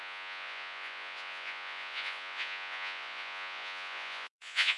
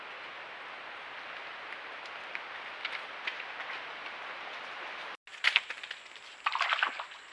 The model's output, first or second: first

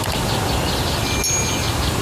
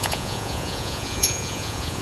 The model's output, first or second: second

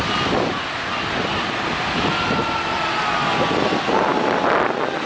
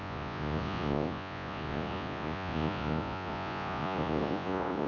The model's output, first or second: second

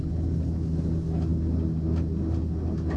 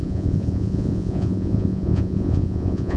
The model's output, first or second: second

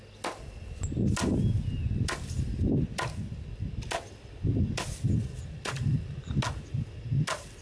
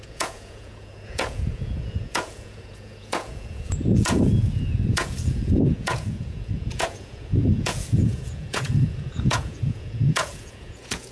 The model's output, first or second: second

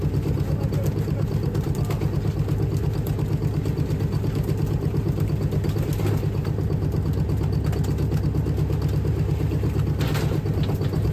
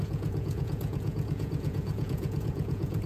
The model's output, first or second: second